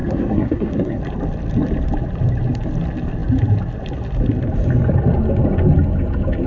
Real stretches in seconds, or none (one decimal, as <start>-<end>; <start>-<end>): 1.0-6.5